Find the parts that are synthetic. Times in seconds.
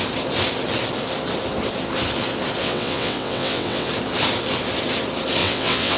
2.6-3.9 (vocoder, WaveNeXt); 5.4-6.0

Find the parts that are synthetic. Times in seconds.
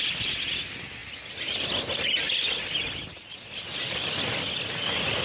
none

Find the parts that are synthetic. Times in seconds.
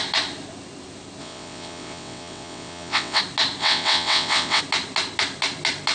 1.2-3.2 (vocoder, WaveNeXt); 3.6-4.6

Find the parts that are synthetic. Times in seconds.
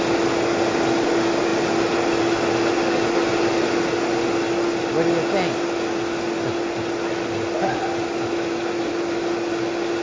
none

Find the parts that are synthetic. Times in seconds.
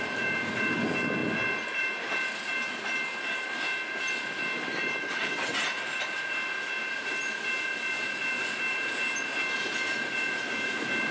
5.0-5.6 (vocoder, WaveNeXt)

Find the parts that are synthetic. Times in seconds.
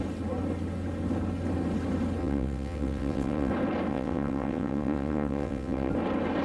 2.2-3.5 (vocoder, WaveNeXt); 3.9-5.9